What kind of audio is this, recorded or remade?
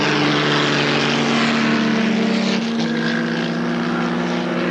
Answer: recorded